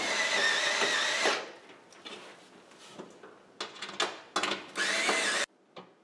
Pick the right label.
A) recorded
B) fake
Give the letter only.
A